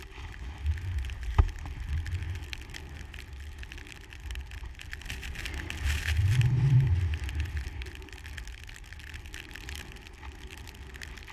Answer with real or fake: real